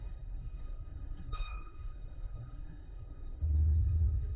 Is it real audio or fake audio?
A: fake